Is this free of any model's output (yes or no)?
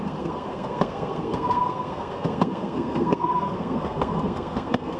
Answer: no